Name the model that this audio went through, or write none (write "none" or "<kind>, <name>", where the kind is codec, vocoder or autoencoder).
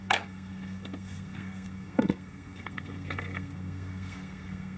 codec, SNAC